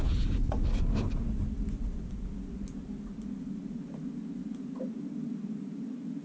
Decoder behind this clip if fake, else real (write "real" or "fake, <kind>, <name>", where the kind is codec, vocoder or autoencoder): real